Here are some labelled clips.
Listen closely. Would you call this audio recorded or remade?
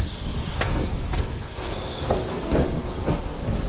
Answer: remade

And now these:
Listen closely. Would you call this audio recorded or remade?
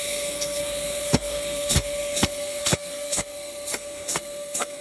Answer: remade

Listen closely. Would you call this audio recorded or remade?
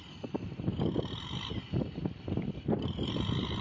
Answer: recorded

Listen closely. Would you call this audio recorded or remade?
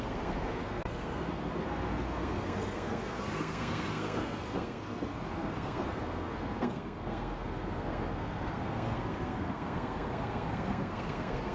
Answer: remade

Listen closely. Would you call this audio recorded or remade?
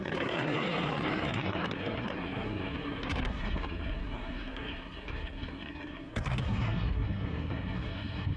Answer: remade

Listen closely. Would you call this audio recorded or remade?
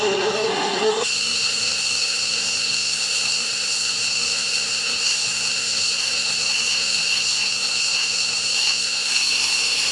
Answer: remade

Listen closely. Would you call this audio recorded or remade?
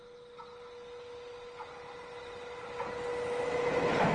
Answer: recorded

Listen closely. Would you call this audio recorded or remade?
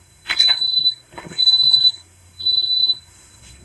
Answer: remade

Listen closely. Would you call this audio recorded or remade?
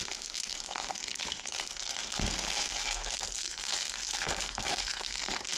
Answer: remade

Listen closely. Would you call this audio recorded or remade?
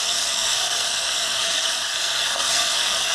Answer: remade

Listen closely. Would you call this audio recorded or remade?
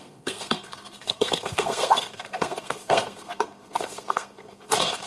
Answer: remade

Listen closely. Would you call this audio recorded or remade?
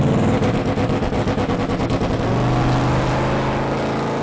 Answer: recorded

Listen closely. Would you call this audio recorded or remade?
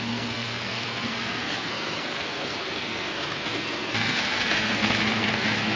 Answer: remade